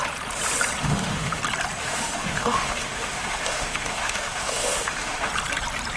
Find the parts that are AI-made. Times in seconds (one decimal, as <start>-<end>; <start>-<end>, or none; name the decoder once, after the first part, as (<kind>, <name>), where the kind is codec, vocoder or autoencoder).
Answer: 0.8-1.4 (autoencoder, DAC-VAE); 1.8-5.3

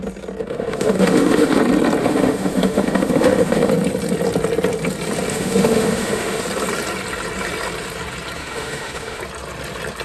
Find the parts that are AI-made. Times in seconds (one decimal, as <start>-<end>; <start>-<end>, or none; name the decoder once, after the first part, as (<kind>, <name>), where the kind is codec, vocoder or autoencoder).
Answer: 0.4-1.6 (autoencoder, DAC-VAE); 2.0-3.7; 5.3-6.4; 8.4-9.2

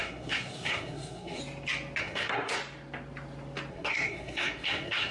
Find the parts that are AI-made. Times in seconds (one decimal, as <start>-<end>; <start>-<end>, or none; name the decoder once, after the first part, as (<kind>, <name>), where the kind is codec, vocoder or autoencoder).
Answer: 0.0-1.4 (codec, SNAC); 2.0-2.6; 3.7-5.1

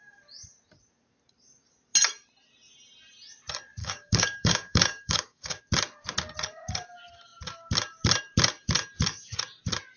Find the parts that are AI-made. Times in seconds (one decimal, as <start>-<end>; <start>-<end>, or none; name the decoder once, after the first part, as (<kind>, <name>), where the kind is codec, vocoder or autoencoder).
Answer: 3.8-5.6 (codec, DAC)

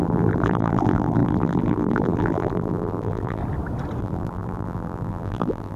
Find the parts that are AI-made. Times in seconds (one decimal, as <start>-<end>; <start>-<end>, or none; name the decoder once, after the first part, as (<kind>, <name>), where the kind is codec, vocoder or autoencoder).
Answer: 0.0-3.4 (vocoder, BigVGAN v2); 4.0-5.8

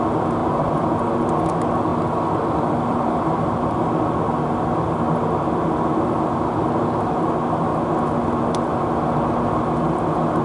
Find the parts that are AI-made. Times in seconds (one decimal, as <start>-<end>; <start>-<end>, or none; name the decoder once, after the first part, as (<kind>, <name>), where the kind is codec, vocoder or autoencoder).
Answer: 0.4-1.1 (vocoder, BigVGAN v2); 1.9-3.9

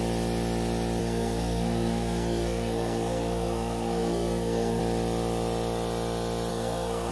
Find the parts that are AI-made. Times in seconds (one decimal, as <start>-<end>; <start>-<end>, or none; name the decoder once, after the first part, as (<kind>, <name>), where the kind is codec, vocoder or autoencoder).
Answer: 1.0-4.8 (codec, SNAC); 6.5-7.1